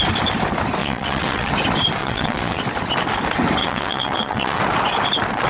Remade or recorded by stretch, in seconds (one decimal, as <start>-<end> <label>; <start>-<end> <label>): 0.0-0.8 recorded; 0.8-1.5 remade; 1.5-2.0 recorded; 2.0-2.6 remade; 2.6-3.6 recorded; 3.6-4.6 remade; 4.6-5.5 recorded